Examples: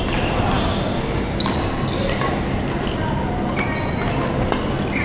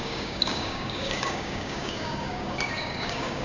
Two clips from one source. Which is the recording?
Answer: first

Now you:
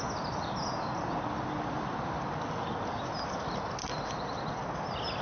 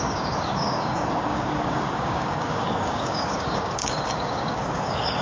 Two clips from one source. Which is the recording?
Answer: first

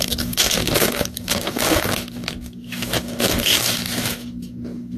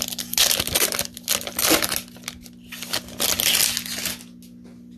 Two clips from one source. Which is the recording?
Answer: second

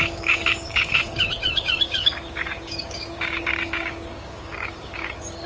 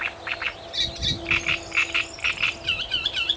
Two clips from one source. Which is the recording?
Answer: second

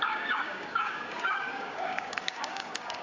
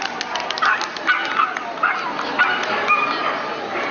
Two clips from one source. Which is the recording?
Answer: second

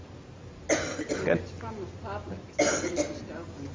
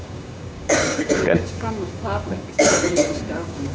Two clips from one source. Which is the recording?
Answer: first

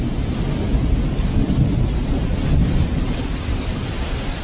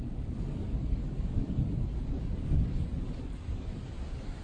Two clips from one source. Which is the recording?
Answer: first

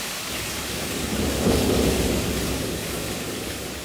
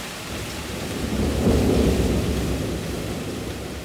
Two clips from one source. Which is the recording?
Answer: second